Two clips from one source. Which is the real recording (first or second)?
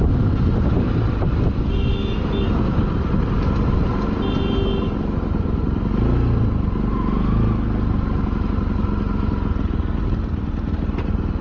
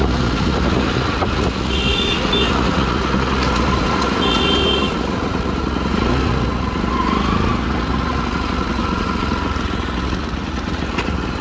first